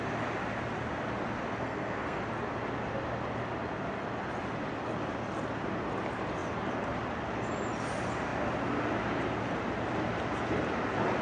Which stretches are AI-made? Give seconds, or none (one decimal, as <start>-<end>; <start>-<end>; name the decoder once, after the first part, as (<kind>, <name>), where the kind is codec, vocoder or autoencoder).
1.6-2.2 (codec, SNAC)